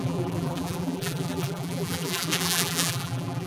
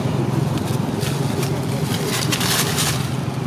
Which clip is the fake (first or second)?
first